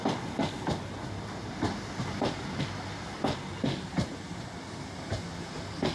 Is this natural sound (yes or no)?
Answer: yes